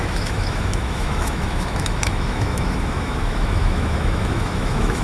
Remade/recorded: remade